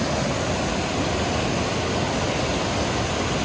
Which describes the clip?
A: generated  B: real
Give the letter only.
B